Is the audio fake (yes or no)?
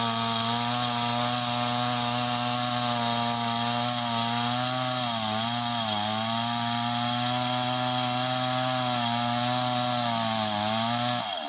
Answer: no